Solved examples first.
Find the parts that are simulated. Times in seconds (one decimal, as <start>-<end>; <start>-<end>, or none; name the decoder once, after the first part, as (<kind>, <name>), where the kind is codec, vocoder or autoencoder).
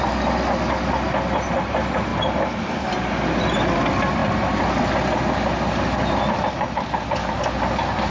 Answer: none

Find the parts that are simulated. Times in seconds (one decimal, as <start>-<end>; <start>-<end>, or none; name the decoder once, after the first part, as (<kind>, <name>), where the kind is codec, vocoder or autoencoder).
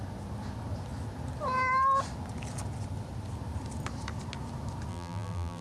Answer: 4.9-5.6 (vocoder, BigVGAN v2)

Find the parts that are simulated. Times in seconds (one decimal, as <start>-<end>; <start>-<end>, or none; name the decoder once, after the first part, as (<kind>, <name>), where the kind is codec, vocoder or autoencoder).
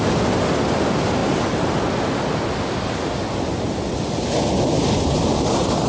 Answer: none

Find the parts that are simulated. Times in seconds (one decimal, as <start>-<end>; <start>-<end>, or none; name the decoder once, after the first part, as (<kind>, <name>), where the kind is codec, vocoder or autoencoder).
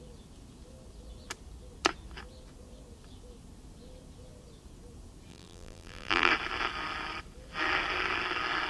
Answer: 5.3-6.3 (vocoder, BigVGAN v2)